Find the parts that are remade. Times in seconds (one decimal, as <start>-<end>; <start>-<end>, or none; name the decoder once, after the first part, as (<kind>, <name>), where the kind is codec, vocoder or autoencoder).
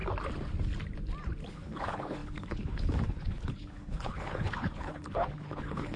1.5-6.0 (codec, HILCodec)